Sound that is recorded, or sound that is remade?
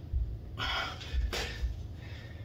recorded